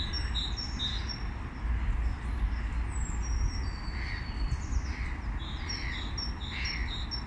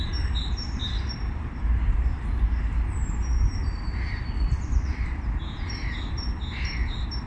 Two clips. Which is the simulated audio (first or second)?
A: second